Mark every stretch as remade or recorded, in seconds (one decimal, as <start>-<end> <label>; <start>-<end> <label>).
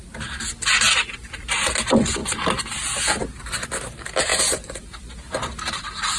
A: 0.0-6.2 recorded